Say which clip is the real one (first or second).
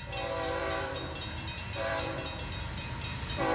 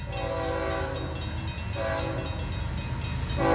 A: second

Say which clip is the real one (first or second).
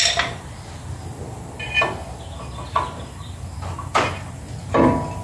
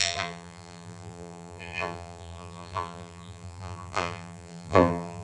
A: first